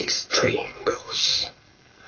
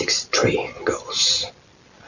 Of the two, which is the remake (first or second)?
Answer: first